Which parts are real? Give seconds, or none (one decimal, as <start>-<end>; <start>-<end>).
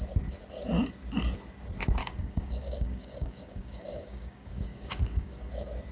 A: 0.0-2.0; 5.5-5.9